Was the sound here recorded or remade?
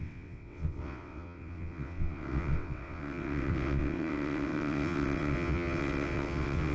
remade